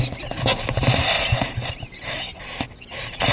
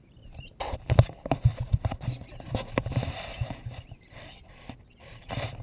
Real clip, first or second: first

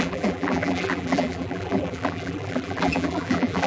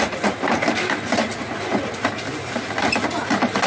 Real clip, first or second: second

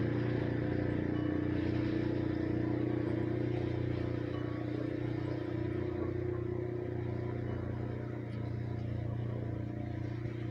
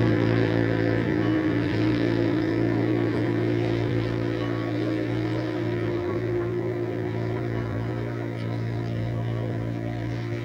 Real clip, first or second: first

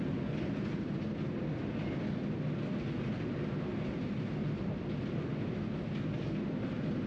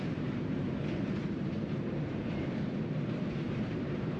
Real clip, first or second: first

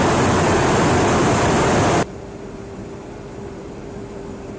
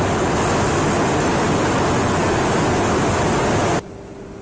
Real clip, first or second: second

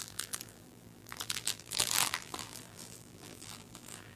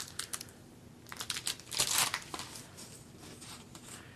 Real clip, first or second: second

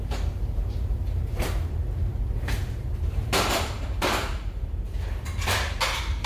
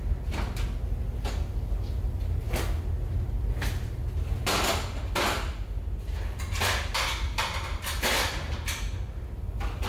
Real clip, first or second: second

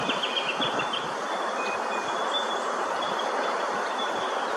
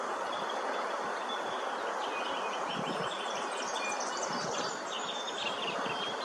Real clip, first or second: second